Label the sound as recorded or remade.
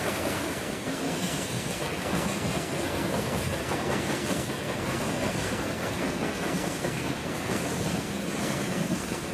remade